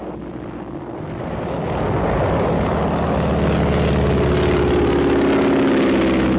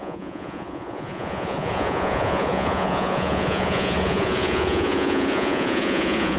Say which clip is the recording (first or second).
first